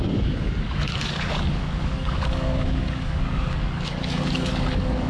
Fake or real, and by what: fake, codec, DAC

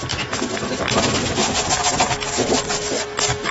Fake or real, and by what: real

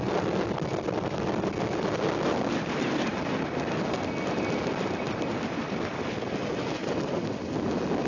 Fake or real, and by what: real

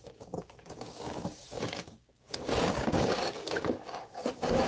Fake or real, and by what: fake, codec, DAC